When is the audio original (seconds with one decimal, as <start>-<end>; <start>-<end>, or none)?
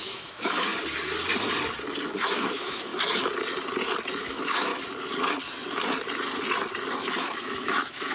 0.7-2.2; 2.9-4.2; 4.7-7.0